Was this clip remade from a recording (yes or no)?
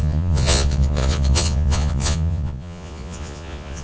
yes